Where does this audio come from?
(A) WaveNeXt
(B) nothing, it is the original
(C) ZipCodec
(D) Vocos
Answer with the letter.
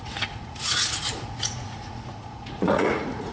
D